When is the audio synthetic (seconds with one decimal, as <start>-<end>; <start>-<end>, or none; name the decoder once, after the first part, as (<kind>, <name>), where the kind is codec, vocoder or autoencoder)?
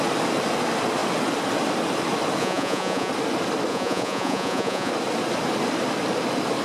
2.4-3.1 (vocoder, Vocos); 3.7-4.9